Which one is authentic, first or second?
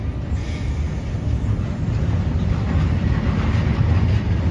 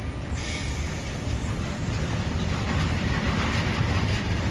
first